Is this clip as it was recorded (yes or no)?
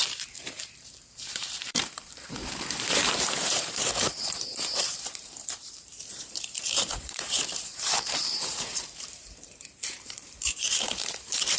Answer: no